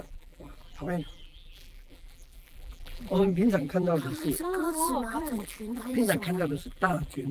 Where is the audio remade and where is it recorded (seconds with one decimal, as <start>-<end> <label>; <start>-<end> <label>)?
0.0-7.3 remade